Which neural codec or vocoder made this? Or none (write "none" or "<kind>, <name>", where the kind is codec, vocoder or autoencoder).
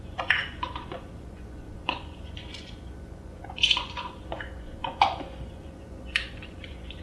vocoder, Vocos